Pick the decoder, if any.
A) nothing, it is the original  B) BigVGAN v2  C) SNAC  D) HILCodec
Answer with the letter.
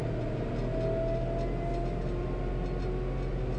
A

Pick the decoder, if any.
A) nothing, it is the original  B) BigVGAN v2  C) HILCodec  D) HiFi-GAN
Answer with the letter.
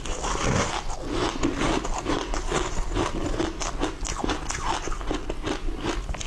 A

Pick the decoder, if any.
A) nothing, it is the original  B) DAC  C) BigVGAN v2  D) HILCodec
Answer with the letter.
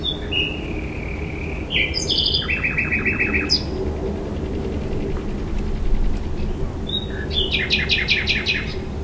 A